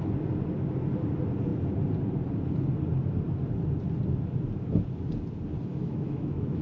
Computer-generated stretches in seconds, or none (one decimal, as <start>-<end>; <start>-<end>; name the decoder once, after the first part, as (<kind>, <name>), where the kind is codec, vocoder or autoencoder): 5.7-6.6 (autoencoder, DAC-VAE)